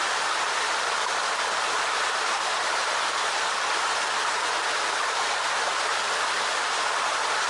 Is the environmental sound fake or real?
real